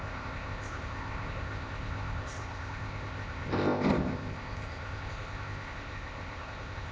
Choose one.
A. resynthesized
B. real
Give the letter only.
A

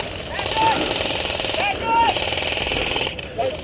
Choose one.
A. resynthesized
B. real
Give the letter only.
B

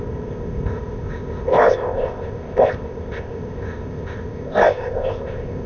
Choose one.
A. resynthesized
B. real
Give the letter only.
A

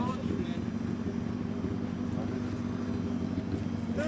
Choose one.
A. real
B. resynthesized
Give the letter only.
A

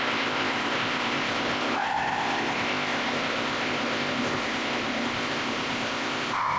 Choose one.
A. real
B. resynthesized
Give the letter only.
B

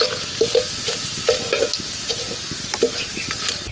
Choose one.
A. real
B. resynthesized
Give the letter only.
A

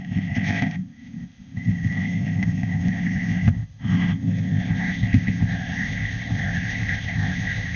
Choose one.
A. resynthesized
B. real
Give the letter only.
A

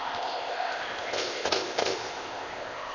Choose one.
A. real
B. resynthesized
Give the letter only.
B